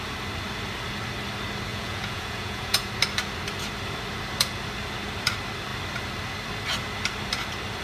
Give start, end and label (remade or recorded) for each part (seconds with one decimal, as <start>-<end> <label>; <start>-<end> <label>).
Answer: 0.0-1.7 recorded; 1.7-2.9 remade; 2.9-7.8 recorded